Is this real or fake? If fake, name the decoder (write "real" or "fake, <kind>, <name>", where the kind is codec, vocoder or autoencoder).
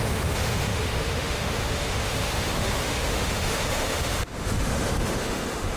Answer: fake, autoencoder, DAC-VAE